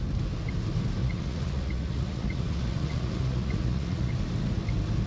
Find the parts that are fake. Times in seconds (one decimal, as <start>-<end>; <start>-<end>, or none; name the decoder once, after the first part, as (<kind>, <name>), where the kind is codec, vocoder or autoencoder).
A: 1.0-4.1 (vocoder, Vocos)